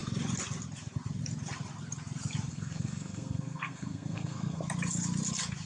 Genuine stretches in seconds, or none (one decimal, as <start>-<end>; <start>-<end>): 0.0-2.5; 4.6-5.7

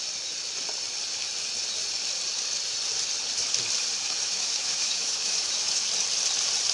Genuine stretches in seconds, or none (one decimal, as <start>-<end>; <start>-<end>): 0.0-4.0; 5.8-6.7